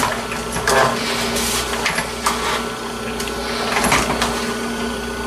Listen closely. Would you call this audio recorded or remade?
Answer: recorded